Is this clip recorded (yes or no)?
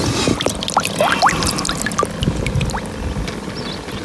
yes